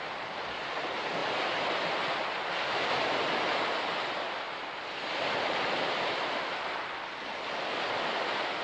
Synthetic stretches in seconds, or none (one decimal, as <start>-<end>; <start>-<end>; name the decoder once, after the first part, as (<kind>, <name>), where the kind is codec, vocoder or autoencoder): none